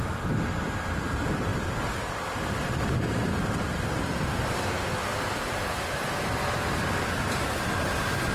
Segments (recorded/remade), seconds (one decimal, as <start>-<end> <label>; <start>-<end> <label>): 0.0-8.3 recorded